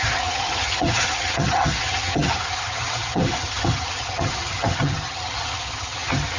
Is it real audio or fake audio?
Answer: fake